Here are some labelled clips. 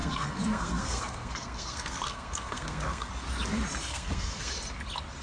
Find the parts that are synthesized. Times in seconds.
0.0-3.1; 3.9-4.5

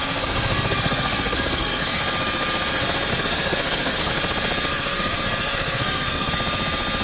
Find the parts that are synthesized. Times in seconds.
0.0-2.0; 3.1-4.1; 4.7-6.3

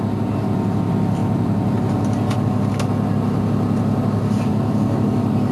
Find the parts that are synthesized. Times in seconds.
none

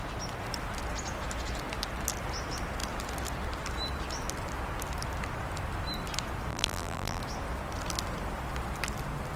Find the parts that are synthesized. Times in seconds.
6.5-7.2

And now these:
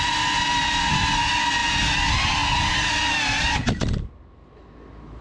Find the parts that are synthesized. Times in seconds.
none